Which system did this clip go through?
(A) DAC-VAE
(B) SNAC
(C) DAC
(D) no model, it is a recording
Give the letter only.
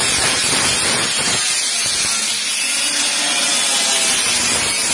D